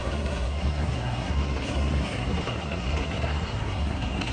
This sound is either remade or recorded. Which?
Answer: remade